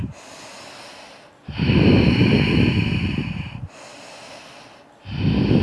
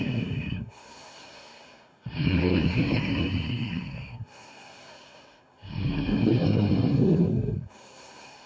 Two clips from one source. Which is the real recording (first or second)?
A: first